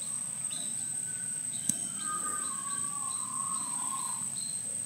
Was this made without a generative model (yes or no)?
yes